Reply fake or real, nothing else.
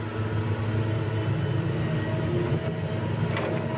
real